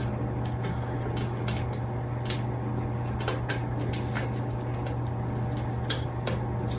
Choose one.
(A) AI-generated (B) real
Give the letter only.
B